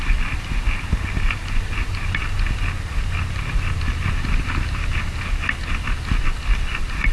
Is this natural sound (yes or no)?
yes